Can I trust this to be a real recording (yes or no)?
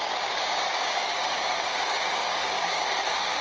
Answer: no